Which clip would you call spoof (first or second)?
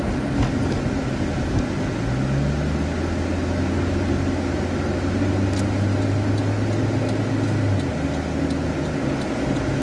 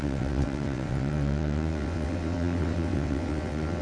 second